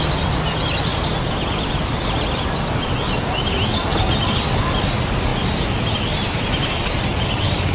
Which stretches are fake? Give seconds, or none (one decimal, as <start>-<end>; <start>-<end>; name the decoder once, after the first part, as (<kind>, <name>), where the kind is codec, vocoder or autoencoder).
none